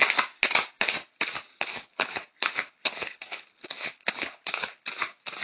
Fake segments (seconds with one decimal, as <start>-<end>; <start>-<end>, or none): 1.7-4.9